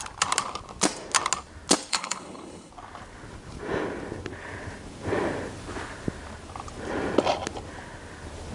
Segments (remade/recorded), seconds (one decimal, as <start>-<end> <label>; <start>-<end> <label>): 0.0-1.9 recorded; 1.9-2.7 remade; 2.7-8.5 recorded